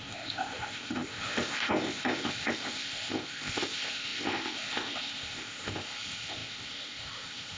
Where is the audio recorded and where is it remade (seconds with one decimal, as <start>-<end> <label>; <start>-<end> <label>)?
0.0-7.6 remade